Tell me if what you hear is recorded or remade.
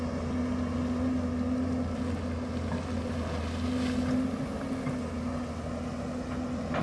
recorded